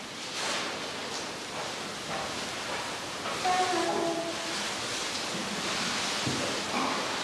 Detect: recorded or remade recorded